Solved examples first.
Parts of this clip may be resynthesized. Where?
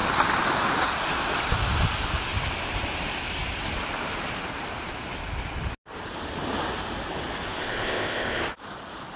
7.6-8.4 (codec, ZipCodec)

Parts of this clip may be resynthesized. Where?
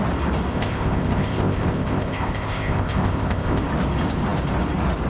0.5-3.6 (codec, ZipCodec)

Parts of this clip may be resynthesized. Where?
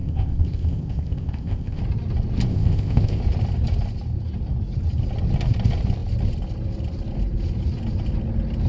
0.0-1.8 (codec, ZipCodec); 2.5-3.2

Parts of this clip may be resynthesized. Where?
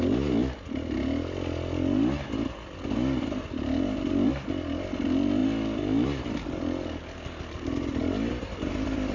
none